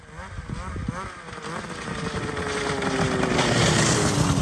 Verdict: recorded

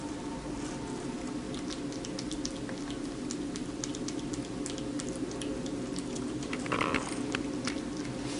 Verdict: recorded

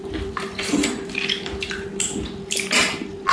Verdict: recorded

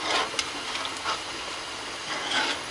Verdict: recorded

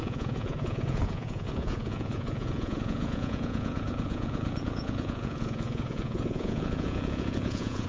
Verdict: remade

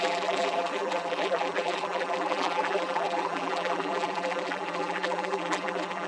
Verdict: remade